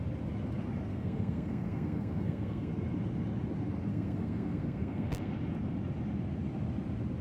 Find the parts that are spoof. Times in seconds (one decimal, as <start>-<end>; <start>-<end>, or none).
0.9-2.7; 3.9-5.3